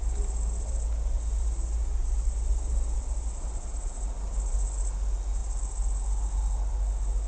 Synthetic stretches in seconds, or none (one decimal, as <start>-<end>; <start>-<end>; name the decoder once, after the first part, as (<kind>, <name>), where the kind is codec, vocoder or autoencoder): none